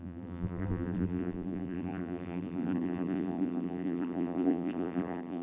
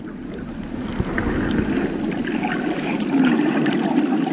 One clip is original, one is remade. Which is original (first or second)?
second